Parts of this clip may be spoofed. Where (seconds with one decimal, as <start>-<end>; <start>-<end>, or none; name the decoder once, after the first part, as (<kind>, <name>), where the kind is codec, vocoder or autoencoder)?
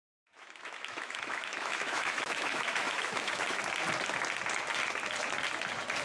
0.0-3.6 (autoencoder, DAC-VAE)